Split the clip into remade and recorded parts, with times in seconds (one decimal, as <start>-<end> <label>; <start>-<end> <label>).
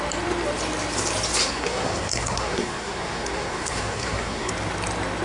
0.0-1.4 recorded; 1.4-4.5 remade; 4.5-5.2 recorded